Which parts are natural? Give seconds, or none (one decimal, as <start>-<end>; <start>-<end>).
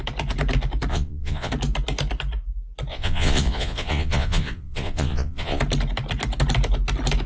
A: 0.0-0.9; 1.5-2.9; 5.6-7.3